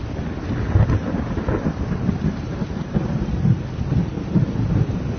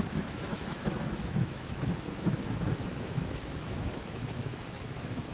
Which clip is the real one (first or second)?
first